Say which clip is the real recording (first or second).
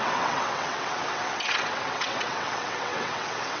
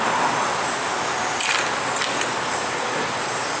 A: second